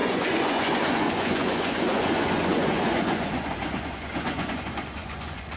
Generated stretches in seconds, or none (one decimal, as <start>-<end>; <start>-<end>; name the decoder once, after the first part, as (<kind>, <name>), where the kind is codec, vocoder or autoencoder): 0.0-5.6 (vocoder, Vocos)

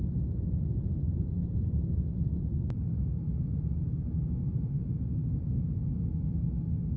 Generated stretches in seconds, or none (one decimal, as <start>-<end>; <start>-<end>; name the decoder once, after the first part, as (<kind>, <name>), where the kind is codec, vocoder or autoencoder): none

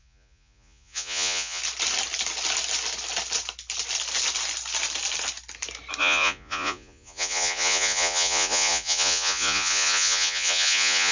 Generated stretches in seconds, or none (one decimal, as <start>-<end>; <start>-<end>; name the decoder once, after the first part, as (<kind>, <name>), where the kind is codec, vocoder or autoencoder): 0.0-1.6 (vocoder, Vocos); 6.0-11.1